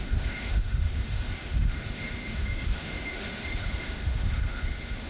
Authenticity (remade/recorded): remade